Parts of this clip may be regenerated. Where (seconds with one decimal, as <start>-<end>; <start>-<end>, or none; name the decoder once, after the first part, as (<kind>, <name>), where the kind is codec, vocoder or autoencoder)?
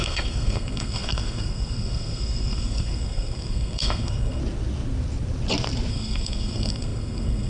0.0-4.4 (codec, SNAC); 5.9-7.5